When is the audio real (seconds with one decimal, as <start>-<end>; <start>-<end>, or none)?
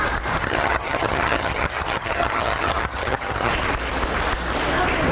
0.0-0.4; 3.5-5.1